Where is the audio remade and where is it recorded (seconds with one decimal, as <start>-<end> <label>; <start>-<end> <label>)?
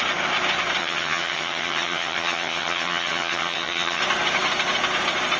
0.0-0.8 recorded; 0.8-4.0 remade; 4.0-5.4 recorded